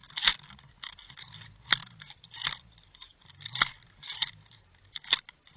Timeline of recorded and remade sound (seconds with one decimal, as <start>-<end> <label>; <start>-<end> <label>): 0.0-5.6 recorded